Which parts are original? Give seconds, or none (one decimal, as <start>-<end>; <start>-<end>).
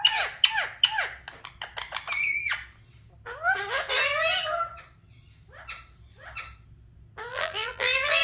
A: 0.0-7.3